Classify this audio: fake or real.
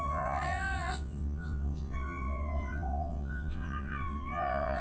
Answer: fake